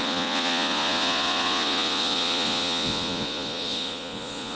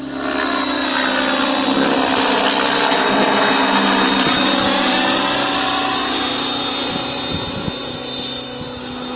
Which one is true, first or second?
second